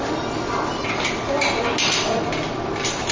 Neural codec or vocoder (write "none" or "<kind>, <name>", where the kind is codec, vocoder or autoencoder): none